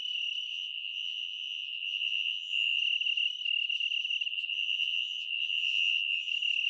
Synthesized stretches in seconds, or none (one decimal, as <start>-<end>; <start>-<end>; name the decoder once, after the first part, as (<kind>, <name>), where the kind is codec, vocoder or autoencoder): 0.5-2.8 (vocoder, Vocos); 4.3-6.3